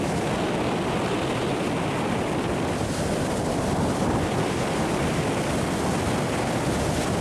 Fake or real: real